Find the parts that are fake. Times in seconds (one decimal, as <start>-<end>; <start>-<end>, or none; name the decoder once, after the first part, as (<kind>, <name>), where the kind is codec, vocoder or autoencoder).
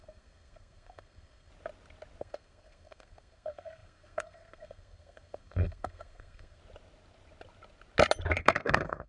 0.0-1.5 (codec, SNAC); 2.2-6.6; 8.4-9.1